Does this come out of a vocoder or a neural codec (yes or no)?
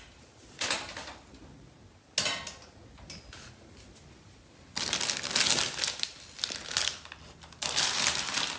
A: no